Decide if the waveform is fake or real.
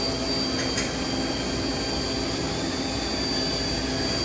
real